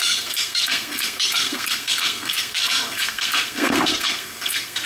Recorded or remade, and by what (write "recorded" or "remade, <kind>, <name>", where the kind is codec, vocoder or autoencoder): remade, codec, SNAC